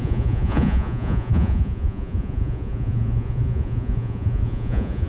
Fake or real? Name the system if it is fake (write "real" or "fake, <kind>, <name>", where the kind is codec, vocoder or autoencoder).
fake, vocoder, Vocos